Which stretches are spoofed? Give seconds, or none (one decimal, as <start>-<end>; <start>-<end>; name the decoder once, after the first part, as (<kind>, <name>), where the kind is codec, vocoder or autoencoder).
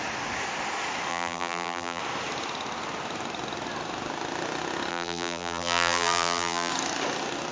1.1-2.0 (vocoder, BigVGAN v2); 4.9-6.7